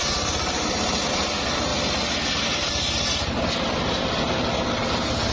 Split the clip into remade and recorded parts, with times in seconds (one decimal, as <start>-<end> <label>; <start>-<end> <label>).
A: 0.0-5.3 recorded